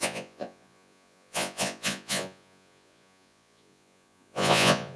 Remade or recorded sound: remade